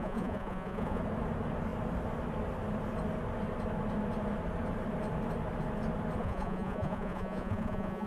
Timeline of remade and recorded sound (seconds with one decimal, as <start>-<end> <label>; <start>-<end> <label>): 0.0-1.0 remade; 1.0-6.2 recorded; 6.2-8.1 remade